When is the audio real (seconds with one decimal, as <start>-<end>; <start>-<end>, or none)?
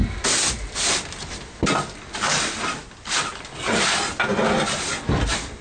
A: 0.0-5.6